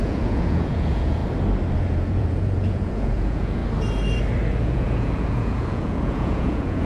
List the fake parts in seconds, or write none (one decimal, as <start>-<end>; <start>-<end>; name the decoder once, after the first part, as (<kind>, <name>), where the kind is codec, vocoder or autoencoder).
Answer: 0.0-1.2 (vocoder, Vocos); 1.8-3.6; 4.6-6.9